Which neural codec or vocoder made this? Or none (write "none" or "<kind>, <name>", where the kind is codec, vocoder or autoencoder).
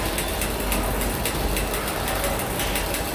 none